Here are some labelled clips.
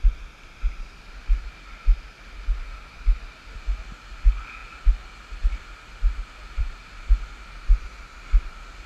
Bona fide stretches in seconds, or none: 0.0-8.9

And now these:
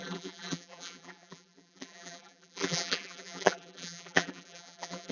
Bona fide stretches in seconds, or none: none

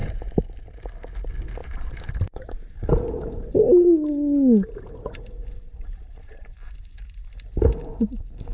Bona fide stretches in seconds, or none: 0.8-1.6; 3.0-5.4; 6.7-8.5

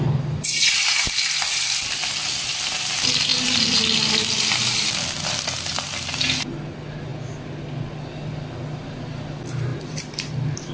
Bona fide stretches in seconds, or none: 0.0-9.7

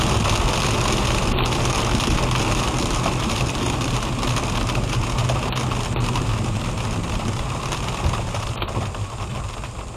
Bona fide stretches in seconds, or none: 0.0-10.0